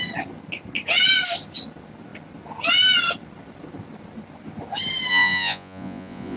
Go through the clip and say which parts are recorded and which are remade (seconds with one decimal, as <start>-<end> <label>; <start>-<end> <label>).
0.0-5.1 recorded; 5.1-6.4 remade